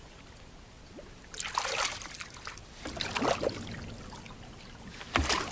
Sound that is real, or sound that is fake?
real